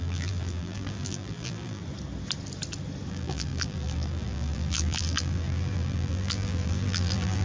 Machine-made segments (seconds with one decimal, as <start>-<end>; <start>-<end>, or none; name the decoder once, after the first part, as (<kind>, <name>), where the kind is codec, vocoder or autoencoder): 0.0-1.8 (vocoder, BigVGAN v2); 3.1-7.4